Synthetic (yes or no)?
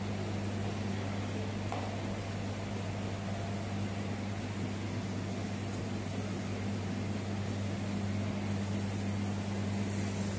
no